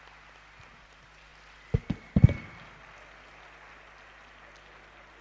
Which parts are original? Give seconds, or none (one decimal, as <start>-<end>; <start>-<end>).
0.0-5.2